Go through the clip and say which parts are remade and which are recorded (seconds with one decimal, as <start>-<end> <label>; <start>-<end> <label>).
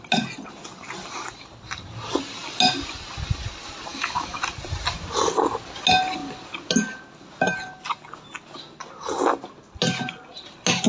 0.0-3.9 recorded; 3.9-4.4 remade; 4.4-10.9 recorded